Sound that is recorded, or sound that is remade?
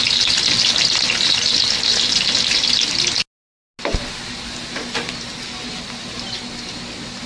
recorded